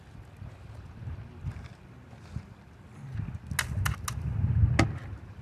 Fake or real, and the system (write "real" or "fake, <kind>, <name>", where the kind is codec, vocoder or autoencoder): real